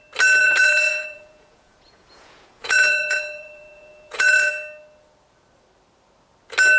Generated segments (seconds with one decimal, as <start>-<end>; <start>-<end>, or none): 0.4-4.5